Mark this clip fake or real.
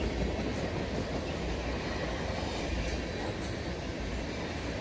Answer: real